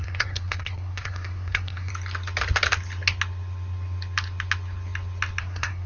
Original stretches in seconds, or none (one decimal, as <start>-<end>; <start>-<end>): 1.9-5.4